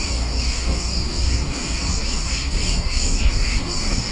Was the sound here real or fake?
fake